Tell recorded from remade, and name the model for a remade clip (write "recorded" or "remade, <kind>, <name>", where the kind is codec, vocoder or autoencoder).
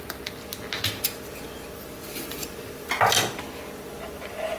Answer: recorded